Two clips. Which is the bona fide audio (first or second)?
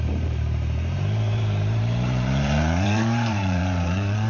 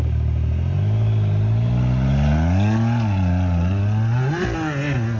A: second